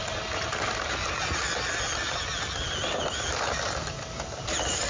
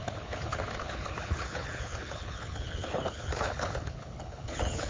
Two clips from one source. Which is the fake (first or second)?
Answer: second